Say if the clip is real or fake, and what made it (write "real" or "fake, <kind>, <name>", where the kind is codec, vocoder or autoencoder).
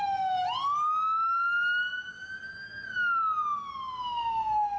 real